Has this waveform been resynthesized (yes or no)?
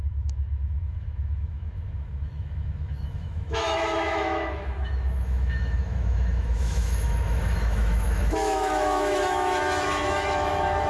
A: yes